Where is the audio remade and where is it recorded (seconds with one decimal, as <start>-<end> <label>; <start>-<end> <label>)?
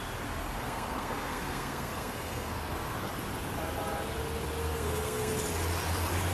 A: 0.0-0.4 recorded; 0.4-3.1 remade; 3.1-4.6 recorded; 4.6-5.3 remade; 5.3-6.3 recorded